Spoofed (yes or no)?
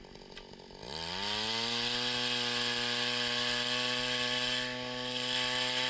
no